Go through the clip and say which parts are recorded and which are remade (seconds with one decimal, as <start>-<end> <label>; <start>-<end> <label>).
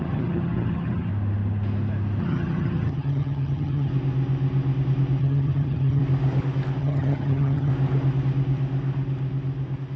0.0-1.1 remade; 1.1-2.2 recorded; 2.2-3.9 remade; 3.9-5.2 recorded; 5.2-6.0 remade; 6.0-6.8 recorded; 6.8-7.7 remade; 7.7-10.0 recorded